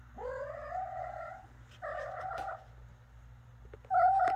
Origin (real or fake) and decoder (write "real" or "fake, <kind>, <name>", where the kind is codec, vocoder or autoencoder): real